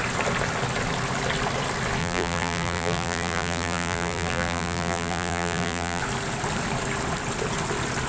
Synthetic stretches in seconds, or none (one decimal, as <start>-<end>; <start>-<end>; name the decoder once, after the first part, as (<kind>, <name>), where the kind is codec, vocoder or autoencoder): 2.0-6.0 (vocoder, BigVGAN v2)